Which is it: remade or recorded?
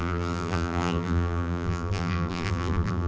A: remade